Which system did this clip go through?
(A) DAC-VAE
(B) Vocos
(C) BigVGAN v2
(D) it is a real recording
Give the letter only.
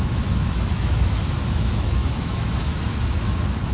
A